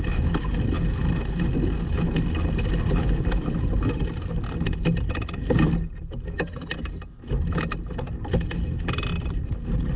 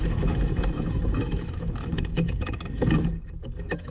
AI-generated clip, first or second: second